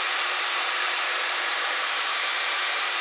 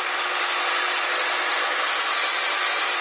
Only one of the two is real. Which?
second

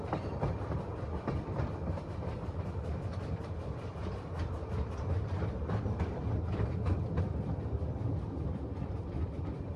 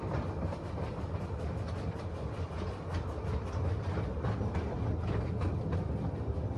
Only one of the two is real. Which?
second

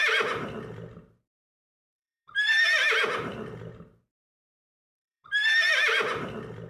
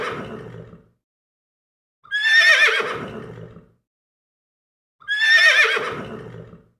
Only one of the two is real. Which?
second